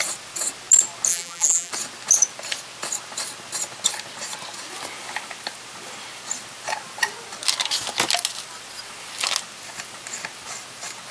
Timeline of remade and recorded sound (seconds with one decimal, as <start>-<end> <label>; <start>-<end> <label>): 0.0-1.1 recorded; 1.1-1.7 remade; 1.7-11.1 recorded